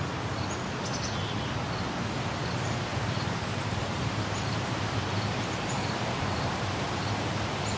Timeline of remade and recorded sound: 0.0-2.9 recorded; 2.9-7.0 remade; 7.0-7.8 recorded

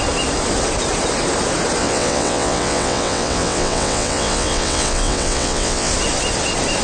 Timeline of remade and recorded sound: 0.0-1.8 recorded; 1.8-5.9 remade; 5.9-6.8 recorded